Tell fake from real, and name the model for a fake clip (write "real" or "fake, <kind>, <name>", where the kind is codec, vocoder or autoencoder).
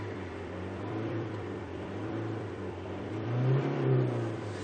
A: fake, vocoder, BigVGAN v2